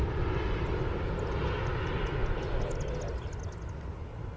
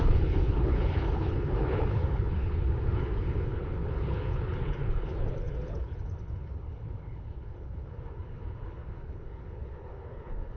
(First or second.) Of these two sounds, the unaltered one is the first